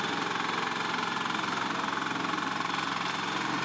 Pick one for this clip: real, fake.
real